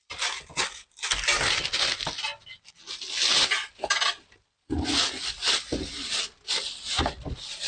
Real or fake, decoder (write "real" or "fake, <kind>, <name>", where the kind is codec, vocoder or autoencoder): real